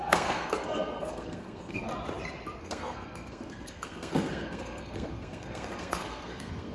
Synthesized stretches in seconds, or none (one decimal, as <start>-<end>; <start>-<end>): 0.0-1.9; 2.6-6.7